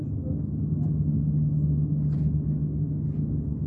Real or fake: real